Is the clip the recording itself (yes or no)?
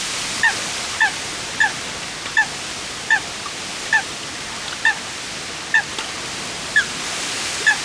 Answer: yes